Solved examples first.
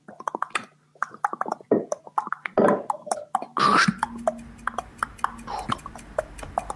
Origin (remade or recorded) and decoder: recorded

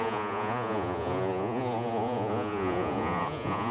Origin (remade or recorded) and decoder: remade, vocoder, Vocos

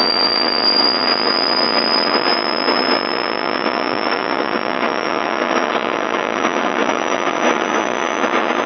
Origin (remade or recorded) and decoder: remade, vocoder, Vocos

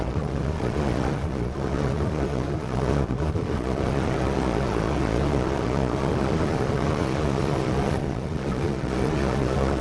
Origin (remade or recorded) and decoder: remade, vocoder, Vocos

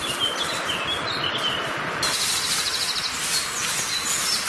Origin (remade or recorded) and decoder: recorded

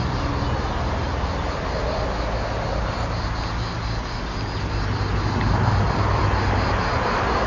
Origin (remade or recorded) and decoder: recorded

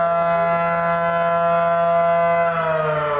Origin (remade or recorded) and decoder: recorded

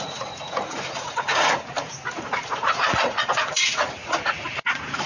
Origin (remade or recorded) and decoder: remade, vocoder, Vocos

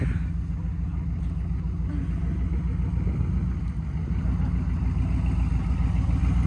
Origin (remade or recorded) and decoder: recorded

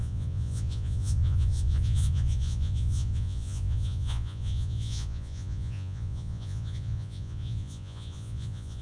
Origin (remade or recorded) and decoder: remade, vocoder, Vocos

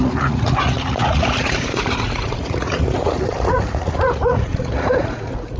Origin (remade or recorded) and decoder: remade, vocoder, Vocos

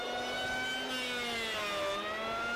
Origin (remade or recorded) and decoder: recorded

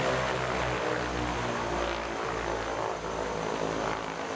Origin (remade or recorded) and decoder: recorded